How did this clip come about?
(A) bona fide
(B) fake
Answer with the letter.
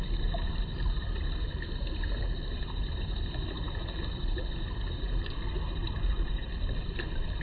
A